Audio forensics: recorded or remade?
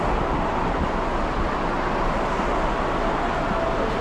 recorded